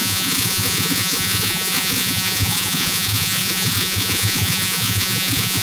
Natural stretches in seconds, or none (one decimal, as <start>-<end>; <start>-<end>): none